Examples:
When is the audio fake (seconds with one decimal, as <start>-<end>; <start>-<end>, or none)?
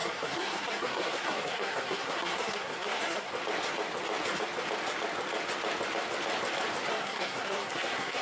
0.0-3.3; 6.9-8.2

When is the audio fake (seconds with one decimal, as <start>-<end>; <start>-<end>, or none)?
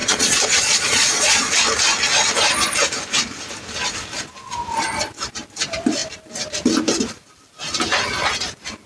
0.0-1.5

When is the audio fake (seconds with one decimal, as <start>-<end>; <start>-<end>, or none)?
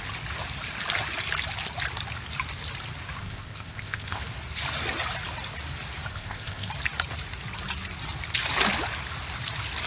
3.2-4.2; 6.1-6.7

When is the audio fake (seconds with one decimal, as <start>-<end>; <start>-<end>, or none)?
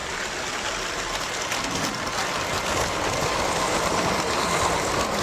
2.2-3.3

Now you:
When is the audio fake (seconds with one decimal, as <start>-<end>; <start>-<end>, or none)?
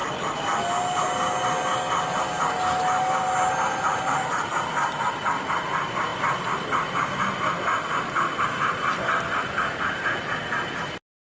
none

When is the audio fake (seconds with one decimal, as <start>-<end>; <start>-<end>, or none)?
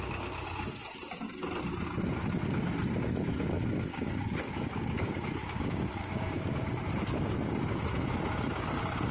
3.9-6.7